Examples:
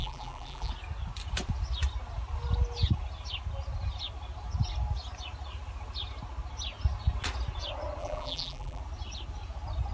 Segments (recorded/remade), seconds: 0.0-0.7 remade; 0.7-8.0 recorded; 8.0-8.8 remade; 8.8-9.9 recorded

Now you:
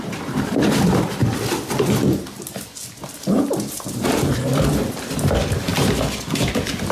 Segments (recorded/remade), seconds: 0.0-6.9 recorded